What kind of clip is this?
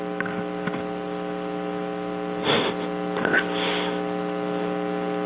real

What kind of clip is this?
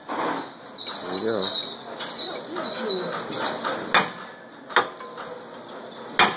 real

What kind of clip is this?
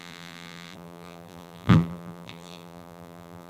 fake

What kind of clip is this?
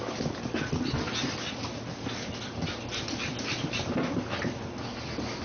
real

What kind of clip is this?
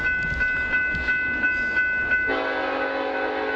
real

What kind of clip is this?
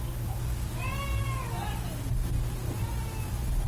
real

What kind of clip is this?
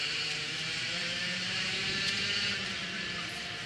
fake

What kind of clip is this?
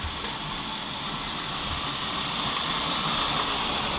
fake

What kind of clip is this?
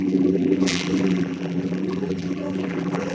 fake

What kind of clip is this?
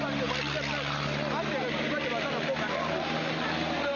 real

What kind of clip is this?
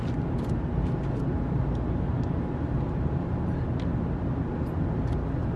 real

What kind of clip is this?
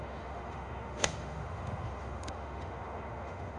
fake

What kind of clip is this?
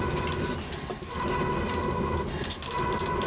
real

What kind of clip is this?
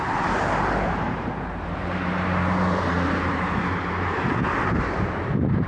fake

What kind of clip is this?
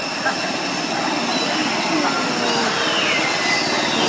real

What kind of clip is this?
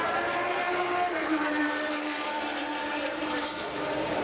fake